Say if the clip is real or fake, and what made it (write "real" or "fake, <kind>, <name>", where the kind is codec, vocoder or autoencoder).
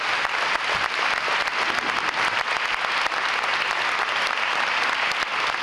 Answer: real